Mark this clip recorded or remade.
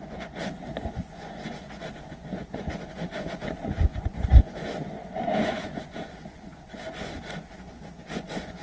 remade